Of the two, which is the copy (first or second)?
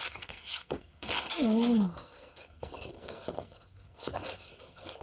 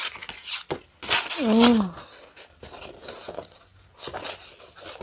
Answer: first